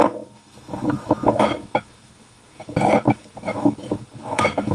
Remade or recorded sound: remade